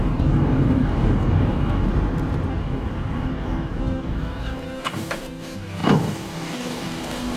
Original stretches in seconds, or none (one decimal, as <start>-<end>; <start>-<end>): 1.9-2.5